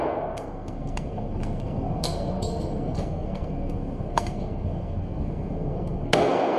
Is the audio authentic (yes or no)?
no